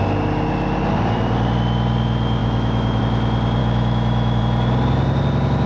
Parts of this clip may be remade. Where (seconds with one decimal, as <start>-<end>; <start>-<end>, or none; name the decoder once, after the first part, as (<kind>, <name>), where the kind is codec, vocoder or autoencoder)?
2.4-3.0 (autoencoder, DAC-VAE); 3.6-4.4